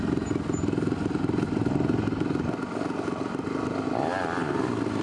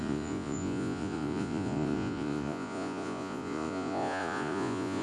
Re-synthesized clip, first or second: second